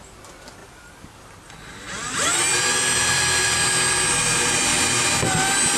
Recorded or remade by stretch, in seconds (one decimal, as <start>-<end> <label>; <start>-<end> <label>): 0.0-0.6 recorded; 0.6-4.1 remade; 4.1-5.8 recorded